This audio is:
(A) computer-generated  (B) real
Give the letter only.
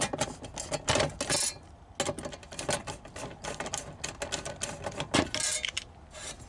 B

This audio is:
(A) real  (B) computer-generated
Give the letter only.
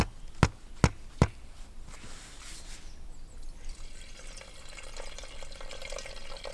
A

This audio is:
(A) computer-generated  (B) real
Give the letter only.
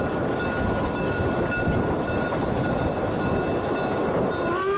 B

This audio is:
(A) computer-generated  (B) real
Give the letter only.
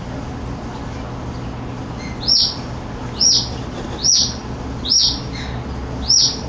B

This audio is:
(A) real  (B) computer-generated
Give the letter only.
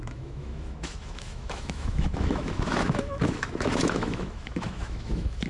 B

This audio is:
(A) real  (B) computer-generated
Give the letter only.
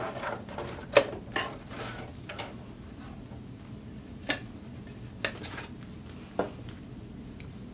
A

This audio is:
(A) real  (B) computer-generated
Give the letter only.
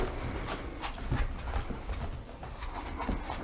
A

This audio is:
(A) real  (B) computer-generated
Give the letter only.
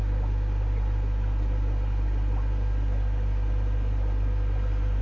A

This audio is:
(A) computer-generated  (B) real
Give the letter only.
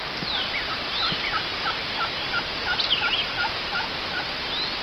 B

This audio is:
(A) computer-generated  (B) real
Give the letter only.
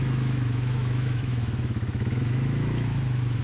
A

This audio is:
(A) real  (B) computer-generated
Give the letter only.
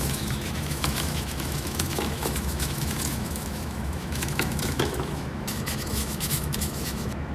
B